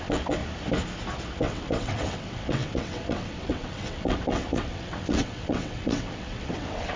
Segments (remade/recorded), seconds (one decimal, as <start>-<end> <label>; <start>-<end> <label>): 0.0-0.4 remade; 0.4-1.3 recorded; 1.3-7.0 remade